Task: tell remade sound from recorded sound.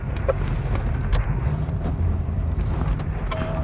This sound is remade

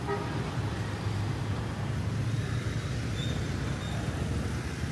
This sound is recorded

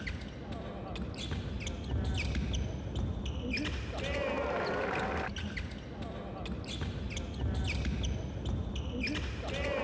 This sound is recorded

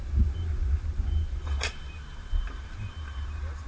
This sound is remade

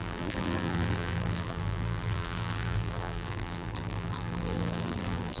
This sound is remade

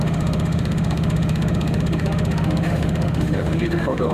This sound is remade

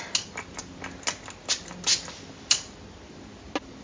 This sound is recorded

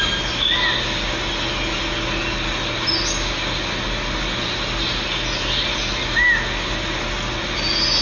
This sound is recorded